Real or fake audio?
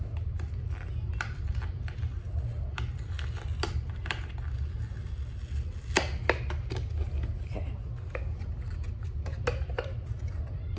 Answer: real